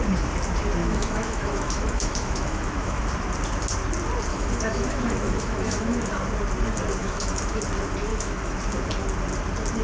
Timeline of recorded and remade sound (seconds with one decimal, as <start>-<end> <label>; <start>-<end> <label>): 0.0-0.8 recorded; 0.8-3.0 remade; 3.0-4.3 recorded; 4.3-6.1 remade; 6.1-7.0 recorded; 7.0-7.6 remade; 7.6-8.1 recorded; 8.1-8.6 remade; 8.6-9.8 recorded